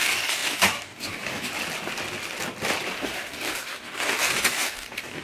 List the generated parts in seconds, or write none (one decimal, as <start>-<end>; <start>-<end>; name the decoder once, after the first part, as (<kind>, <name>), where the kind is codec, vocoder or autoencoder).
0.0-1.5 (codec, DAC); 3.0-5.2